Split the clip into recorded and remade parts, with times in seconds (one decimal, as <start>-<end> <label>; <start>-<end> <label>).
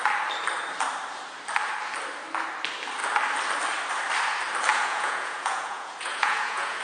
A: 0.0-4.7 recorded; 4.7-6.8 remade